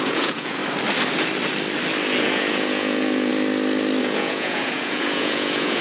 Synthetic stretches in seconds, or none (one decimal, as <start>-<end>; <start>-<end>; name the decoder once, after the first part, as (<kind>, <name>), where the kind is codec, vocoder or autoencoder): 0.0-0.6 (vocoder, Vocos); 2.2-3.3; 4.0-5.8